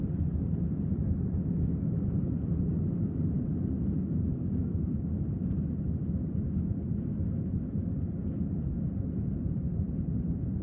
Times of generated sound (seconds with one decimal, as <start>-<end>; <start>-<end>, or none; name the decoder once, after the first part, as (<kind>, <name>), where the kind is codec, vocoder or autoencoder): 4.3-4.9 (codec, SNAC)

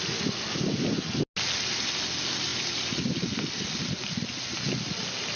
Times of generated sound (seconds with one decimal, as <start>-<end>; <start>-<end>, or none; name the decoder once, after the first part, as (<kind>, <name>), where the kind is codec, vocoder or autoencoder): none

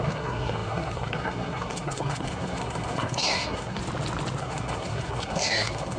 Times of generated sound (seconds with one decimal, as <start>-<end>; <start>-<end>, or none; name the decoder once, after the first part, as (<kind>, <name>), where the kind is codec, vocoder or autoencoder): 0.0-3.8 (codec, SNAC); 4.4-6.0

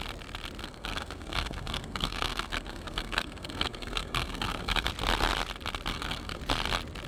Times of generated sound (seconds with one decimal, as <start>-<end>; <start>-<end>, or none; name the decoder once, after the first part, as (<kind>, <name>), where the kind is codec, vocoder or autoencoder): 0.6-4.9 (codec, SNAC); 5.9-6.4

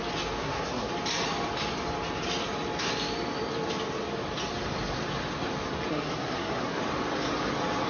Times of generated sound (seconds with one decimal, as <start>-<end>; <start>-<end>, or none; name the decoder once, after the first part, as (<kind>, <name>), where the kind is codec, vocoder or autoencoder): 0.4-0.9 (codec, SNAC); 5.9-6.8

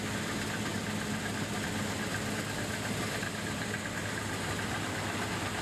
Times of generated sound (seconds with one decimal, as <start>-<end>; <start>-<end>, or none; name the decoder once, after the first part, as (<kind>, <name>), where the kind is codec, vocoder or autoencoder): none